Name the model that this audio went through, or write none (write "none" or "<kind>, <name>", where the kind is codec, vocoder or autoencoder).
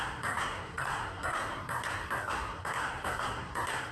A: codec, SNAC